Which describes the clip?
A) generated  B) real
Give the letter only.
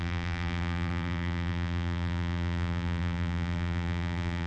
A